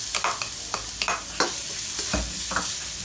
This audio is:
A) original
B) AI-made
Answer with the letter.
A